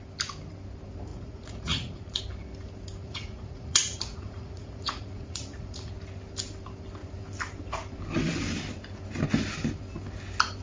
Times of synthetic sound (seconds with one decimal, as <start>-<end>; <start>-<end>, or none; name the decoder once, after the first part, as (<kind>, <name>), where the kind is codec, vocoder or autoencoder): 1.1-2.2 (vocoder, Vocos); 3.0-5.9